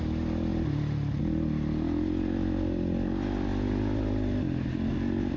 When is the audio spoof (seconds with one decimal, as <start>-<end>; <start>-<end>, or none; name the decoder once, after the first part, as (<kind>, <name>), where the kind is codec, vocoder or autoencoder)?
none